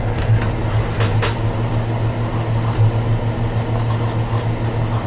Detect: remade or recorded recorded